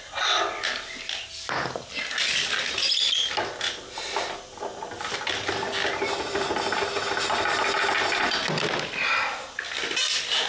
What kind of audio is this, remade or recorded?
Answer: recorded